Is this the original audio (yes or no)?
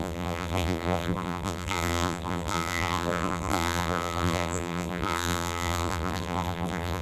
no